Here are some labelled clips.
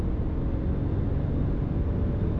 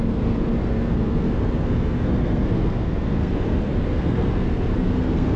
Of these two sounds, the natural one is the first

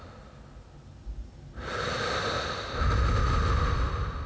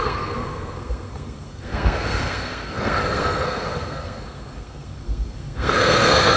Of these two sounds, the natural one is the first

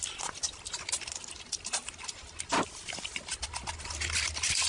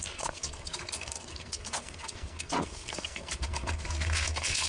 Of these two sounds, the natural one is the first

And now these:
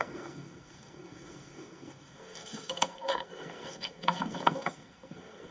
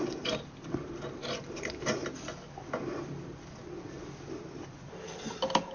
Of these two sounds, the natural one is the second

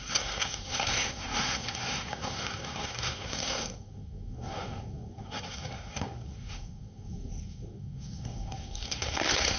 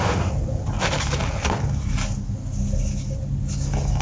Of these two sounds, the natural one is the second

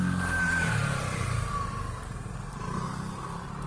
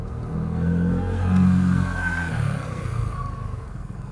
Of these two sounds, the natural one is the first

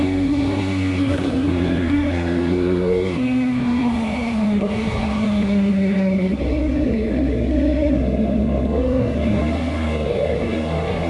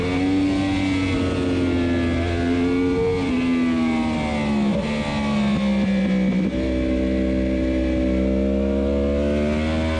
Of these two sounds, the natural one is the second